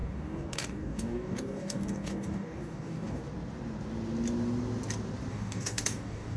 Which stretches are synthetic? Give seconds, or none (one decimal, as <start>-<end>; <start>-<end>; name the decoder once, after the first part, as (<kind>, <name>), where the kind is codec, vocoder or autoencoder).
0.0-3.2 (codec, DAC); 5.3-6.4